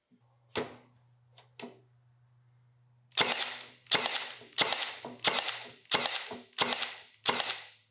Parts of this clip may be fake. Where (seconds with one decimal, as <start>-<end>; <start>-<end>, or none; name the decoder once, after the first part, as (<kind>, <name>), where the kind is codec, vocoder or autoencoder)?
none